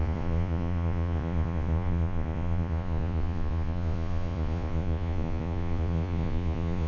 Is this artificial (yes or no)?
yes